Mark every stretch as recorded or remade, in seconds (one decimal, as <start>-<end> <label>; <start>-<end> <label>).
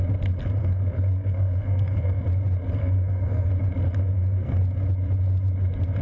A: 0.0-0.6 recorded; 0.6-2.2 remade; 2.2-2.8 recorded; 2.8-3.5 remade; 3.5-4.0 recorded; 4.0-4.6 remade; 4.6-6.0 recorded